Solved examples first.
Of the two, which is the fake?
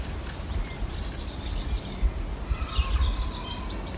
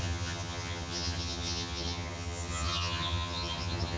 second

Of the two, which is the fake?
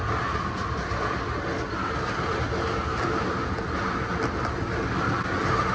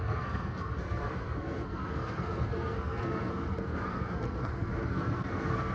second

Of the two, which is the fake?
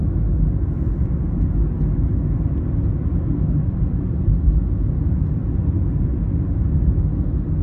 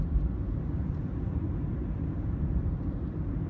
second